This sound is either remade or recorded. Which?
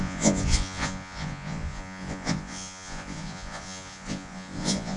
remade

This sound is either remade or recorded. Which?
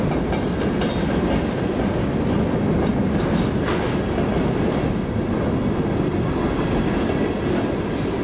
recorded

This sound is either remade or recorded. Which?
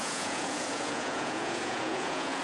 remade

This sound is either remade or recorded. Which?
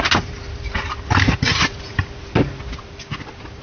recorded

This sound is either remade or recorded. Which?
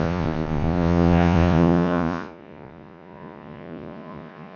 remade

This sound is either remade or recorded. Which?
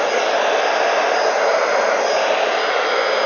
recorded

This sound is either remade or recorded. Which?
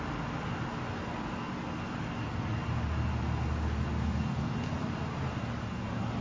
recorded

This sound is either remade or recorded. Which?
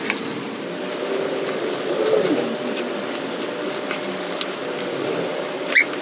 recorded